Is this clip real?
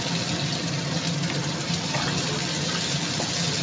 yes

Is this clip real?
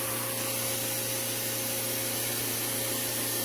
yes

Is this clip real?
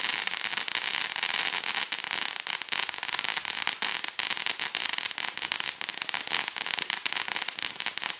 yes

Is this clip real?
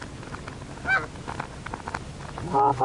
yes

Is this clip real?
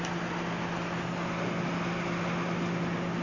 yes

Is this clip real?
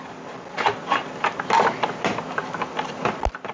yes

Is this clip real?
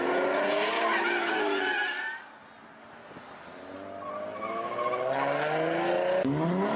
yes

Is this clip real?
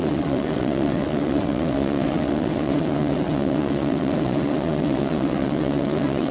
no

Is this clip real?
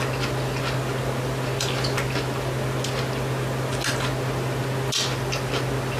yes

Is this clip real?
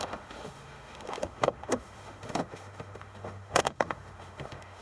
no